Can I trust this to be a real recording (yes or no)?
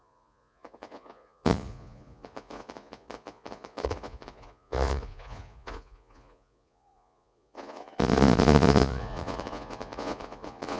no